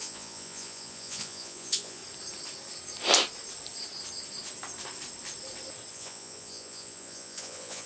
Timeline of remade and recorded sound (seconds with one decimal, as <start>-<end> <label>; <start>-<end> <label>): 0.0-2.0 remade; 2.0-5.9 recorded; 5.9-7.9 remade